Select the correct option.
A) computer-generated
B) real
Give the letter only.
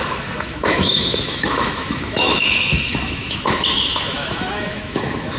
A